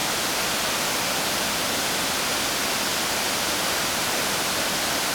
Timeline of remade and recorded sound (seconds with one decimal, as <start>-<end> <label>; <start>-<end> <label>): 0.0-2.9 recorded; 2.9-4.2 remade; 4.2-5.1 recorded